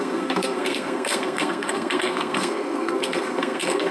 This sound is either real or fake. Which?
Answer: fake